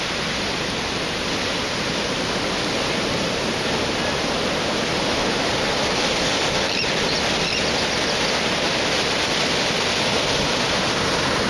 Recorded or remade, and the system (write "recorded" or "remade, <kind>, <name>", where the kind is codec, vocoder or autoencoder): recorded